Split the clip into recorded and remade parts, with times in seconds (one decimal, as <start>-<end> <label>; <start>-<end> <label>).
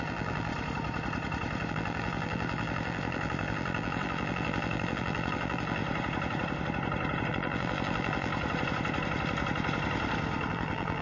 0.0-0.5 remade; 0.5-1.7 recorded; 1.7-5.8 remade; 5.8-7.3 recorded; 7.3-8.3 remade; 8.3-10.5 recorded; 10.5-11.0 remade